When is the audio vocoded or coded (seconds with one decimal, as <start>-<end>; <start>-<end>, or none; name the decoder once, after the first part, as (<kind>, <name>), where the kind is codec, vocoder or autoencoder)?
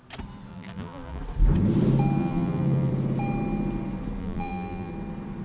0.5-1.2 (vocoder, BigVGAN v2); 2.2-2.9; 4.2-4.9